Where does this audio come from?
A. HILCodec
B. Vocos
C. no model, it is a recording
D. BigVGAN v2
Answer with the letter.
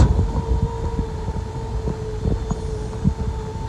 C